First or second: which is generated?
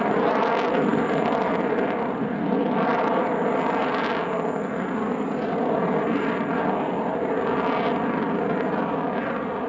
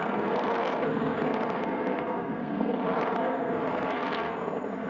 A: second